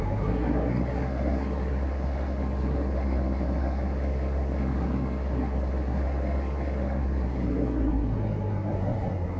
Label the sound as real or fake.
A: fake